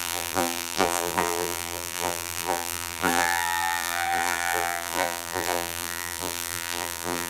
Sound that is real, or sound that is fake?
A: fake